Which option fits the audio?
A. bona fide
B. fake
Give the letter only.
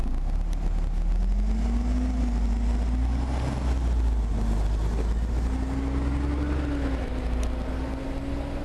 A